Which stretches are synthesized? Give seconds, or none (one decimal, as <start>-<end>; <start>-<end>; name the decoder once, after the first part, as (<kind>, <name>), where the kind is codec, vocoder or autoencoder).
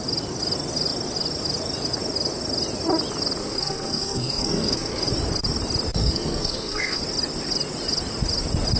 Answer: 3.4-5.1 (codec, SNAC); 6.0-7.0